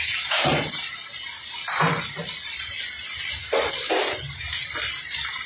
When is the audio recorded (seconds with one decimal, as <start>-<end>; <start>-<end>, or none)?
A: 1.0-4.3